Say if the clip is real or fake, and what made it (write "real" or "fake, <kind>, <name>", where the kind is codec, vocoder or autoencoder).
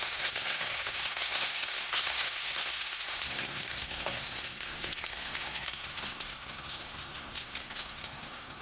fake, codec, SNAC